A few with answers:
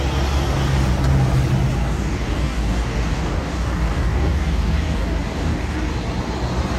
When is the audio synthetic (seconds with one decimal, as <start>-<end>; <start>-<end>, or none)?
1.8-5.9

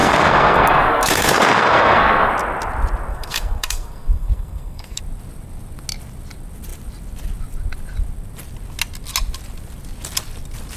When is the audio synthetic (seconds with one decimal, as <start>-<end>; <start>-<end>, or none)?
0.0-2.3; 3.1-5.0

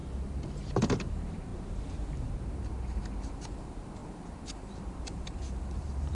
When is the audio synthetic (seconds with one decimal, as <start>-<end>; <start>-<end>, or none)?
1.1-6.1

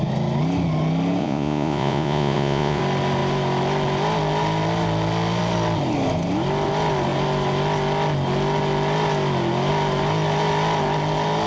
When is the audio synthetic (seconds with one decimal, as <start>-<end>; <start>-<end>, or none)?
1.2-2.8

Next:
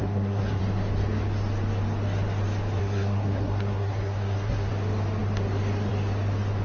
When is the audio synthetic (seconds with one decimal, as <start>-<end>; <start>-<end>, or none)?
0.0-0.6; 2.8-4.7

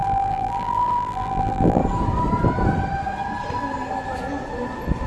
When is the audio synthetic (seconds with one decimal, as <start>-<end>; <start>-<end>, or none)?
0.0-1.8

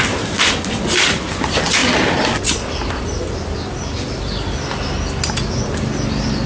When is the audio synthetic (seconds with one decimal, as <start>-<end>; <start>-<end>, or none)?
0.0-6.5